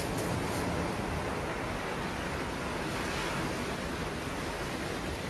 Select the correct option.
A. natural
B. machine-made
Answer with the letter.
A